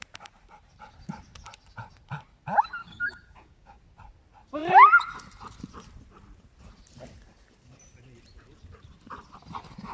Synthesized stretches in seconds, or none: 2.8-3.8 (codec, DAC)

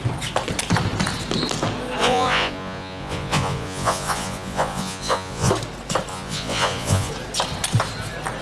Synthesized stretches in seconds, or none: 2.0-5.5 (vocoder, Vocos); 6.1-7.1

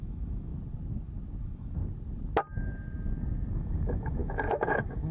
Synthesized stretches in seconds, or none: 0.0-0.5 (autoencoder, DAC-VAE); 1.4-1.8; 3.5-5.1

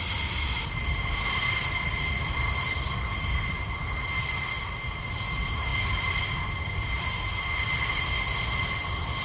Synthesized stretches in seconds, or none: none